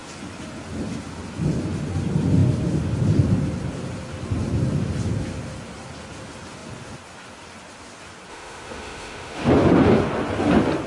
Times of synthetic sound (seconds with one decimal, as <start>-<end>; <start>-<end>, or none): 8.3-9.5